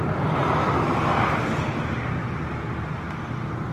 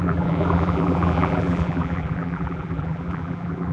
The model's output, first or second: second